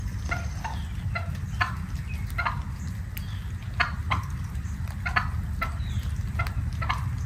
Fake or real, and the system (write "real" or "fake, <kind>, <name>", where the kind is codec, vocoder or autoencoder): real